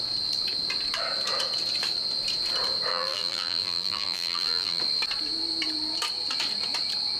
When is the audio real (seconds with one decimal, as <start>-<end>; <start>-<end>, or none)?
0.0-2.9; 4.8-7.2